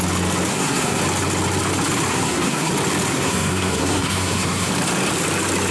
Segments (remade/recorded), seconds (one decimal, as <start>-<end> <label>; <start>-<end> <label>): 0.0-0.5 recorded; 0.5-1.0 remade; 1.0-2.1 recorded; 2.1-2.7 remade; 2.7-3.1 recorded; 3.1-4.7 remade; 4.7-5.7 recorded